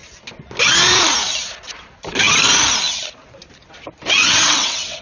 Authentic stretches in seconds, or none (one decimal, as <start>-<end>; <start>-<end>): 0.0-4.2